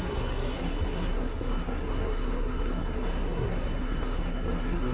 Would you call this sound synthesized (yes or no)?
yes